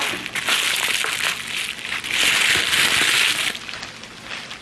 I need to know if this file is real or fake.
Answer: real